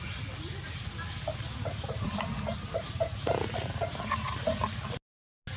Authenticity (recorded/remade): recorded